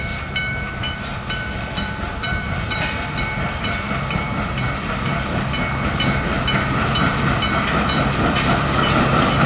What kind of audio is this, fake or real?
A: fake